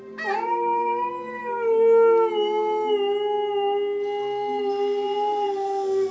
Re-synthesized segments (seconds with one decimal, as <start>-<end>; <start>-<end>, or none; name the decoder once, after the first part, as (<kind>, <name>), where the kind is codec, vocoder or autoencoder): 0.0-1.4 (vocoder, BigVGAN v2); 4.6-6.1